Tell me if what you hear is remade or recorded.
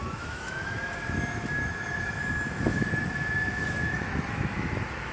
remade